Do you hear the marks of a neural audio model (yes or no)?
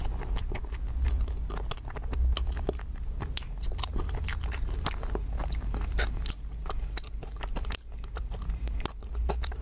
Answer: no